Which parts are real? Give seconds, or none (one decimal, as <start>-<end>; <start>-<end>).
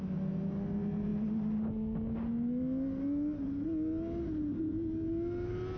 0.0-5.8